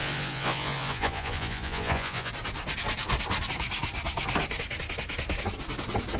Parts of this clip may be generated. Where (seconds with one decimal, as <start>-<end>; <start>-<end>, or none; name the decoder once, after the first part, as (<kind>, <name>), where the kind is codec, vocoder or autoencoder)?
0.0-2.3 (vocoder, Vocos)